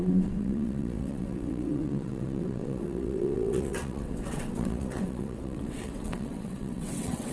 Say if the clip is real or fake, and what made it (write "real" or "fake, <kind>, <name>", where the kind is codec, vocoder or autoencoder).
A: fake, vocoder, WaveNeXt